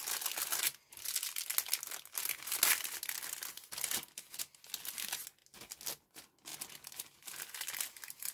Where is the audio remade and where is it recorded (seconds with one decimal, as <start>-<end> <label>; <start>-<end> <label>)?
0.0-8.3 recorded